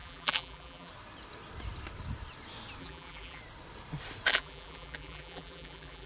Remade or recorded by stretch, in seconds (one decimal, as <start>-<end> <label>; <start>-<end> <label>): 0.0-0.9 remade; 0.9-2.8 recorded; 2.8-3.4 remade; 3.4-4.3 recorded; 4.3-6.1 remade